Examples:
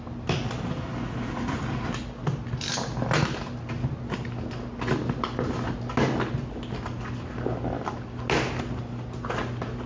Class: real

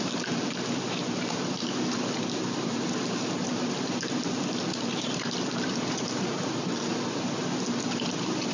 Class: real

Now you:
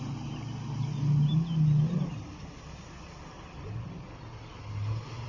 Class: real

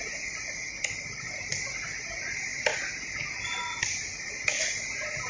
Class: real